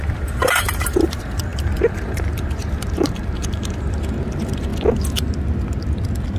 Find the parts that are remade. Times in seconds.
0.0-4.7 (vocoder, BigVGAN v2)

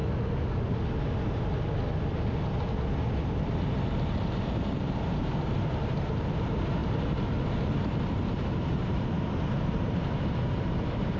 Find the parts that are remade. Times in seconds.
3.2-6.8 (vocoder, BigVGAN v2); 7.7-11.2

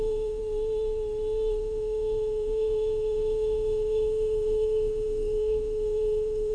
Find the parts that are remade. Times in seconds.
0.0-0.4 (autoencoder, DAC-VAE); 1.6-6.5

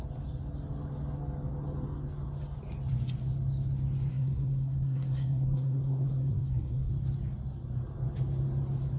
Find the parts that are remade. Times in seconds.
4.1-6.9 (codec, SNAC)

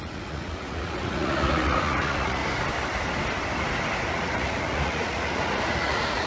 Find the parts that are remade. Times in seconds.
0.0-2.4 (vocoder, Vocos); 4.1-6.3

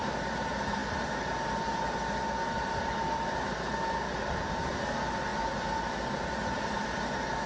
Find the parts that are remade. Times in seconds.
0.0-7.5 (vocoder, BigVGAN v2)

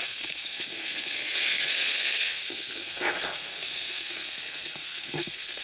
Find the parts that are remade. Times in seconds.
0.0-5.6 (codec, SNAC)